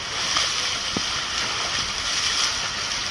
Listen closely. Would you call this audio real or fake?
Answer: fake